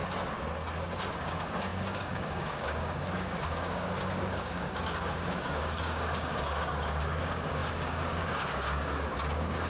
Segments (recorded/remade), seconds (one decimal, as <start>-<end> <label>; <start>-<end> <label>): 0.0-1.1 recorded; 1.1-9.7 remade